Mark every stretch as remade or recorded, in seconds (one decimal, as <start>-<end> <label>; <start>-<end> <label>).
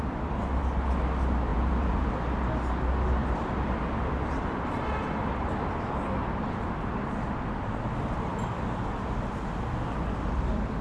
0.0-1.5 recorded; 1.5-2.1 remade; 2.1-10.8 recorded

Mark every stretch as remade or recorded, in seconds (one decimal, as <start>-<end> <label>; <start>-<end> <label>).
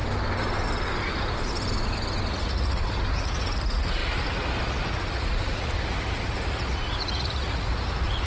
0.0-2.3 recorded; 2.3-8.3 remade